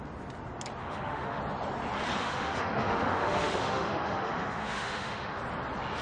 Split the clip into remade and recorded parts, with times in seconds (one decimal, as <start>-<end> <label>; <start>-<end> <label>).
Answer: 0.0-0.8 recorded; 0.8-1.4 remade; 1.4-2.2 recorded; 2.2-5.4 remade; 5.4-6.0 recorded